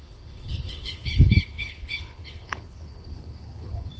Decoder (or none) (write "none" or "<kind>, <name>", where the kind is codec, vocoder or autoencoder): codec, HILCodec